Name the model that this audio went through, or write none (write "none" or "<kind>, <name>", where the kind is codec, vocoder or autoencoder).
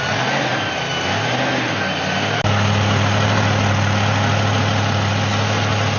none